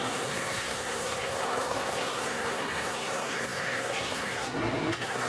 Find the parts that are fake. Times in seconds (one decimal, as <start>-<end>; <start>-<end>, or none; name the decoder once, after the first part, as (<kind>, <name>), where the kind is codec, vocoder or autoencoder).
0.0-5.3 (codec, SNAC)